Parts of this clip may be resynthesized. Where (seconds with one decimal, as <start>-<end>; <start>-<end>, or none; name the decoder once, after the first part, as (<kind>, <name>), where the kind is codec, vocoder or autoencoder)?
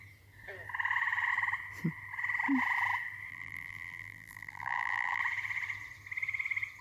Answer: 3.3-5.2 (vocoder, BigVGAN v2)